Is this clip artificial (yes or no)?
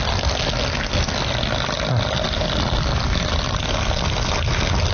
no